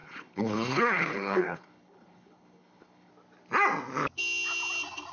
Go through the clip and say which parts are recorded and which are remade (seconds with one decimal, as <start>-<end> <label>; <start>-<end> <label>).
0.0-3.1 remade; 3.1-5.1 recorded